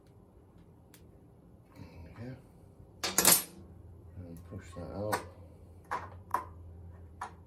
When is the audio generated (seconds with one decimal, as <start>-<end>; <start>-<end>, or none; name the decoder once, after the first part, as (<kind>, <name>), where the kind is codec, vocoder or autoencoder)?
none